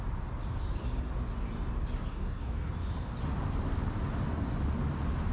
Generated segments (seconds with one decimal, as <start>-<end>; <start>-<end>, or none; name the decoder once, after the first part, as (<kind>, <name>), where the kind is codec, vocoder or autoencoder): 2.1-2.7 (codec, DAC)